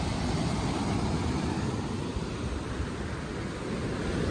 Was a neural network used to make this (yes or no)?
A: no